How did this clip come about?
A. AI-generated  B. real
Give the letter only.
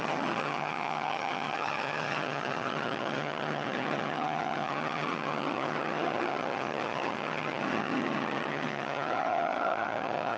A